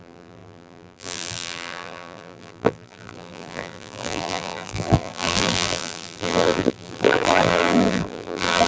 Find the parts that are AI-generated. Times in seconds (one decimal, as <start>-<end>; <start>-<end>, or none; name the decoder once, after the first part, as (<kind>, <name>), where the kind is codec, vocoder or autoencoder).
0.0-8.7 (vocoder, BigVGAN v2)